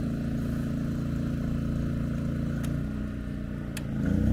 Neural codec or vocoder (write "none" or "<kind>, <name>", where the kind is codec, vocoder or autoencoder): none